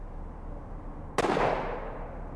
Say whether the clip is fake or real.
real